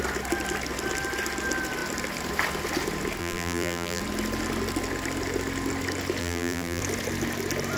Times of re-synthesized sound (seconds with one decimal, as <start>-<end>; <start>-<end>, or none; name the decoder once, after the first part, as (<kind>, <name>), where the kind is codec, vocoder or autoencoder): 3.2-4.0 (vocoder, BigVGAN v2); 6.2-6.8

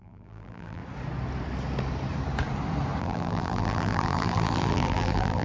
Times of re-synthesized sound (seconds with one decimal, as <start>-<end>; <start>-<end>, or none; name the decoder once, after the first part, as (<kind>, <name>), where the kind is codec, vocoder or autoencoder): 0.0-0.8 (vocoder, BigVGAN v2); 3.0-5.4

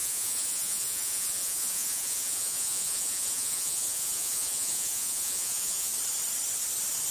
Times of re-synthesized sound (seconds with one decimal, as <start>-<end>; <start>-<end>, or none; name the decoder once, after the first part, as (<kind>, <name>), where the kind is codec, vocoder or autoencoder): 0.0-5.9 (vocoder, Vocos)

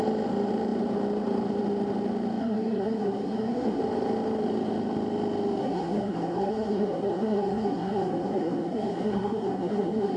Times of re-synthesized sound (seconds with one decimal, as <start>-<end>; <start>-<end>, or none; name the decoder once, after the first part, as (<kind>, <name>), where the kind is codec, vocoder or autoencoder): 2.4-3.8 (codec, SNAC); 5.6-10.2

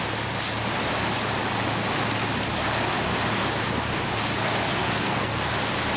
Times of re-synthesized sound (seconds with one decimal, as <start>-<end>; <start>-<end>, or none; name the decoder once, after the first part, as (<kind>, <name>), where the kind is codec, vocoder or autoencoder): 4.7-5.3 (codec, SNAC)